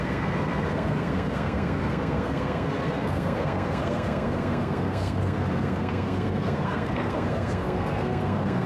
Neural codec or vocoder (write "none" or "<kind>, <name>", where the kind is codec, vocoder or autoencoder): codec, SNAC